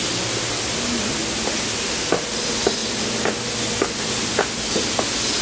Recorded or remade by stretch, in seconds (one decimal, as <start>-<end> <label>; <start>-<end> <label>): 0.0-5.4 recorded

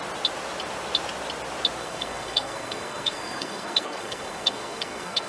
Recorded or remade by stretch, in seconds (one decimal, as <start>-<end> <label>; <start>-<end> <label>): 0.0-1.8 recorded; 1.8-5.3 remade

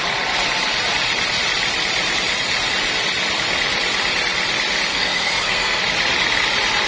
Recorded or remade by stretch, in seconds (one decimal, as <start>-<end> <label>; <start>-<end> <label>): 0.0-4.9 recorded; 4.9-5.8 remade; 5.8-6.9 recorded

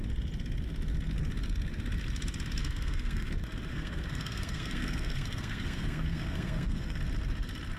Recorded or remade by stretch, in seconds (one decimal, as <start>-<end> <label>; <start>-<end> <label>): 0.0-2.6 recorded; 2.6-3.3 remade; 3.3-3.7 recorded; 3.7-7.0 remade; 7.0-7.8 recorded

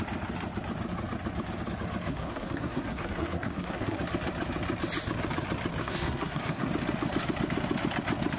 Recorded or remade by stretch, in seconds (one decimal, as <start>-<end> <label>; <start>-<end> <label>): 0.0-2.1 recorded; 2.1-4.0 remade; 4.0-5.8 recorded; 5.8-6.7 remade; 6.7-8.4 recorded

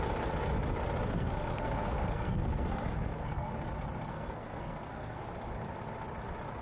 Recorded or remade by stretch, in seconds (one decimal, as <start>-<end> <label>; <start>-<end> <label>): 0.0-1.1 recorded; 1.1-3.5 remade; 3.5-4.1 recorded; 4.1-5.2 remade; 5.2-6.6 recorded

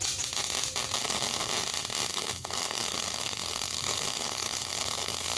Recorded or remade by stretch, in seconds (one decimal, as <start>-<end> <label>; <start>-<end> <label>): 0.0-1.0 recorded; 1.0-1.5 remade; 1.5-2.1 recorded; 2.1-5.4 remade

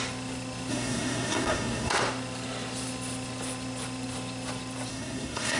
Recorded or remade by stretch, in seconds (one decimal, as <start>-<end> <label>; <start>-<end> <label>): 0.0-0.7 recorded; 0.7-1.9 remade; 1.9-4.9 recorded; 4.9-5.6 remade